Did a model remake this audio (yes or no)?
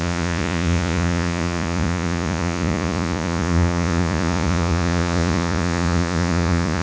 yes